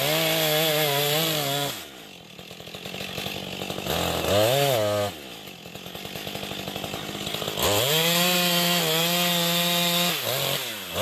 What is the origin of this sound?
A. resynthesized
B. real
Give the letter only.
B